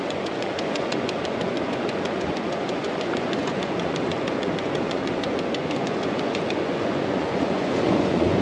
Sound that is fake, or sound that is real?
fake